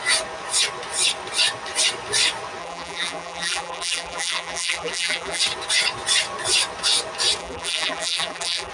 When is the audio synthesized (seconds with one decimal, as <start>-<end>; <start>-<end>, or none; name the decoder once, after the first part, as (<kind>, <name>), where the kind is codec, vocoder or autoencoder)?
2.6-5.4 (vocoder, BigVGAN v2); 7.4-8.7